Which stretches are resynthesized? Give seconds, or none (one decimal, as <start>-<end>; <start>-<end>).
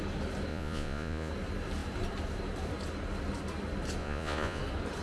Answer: 0.5-1.3; 4.0-4.6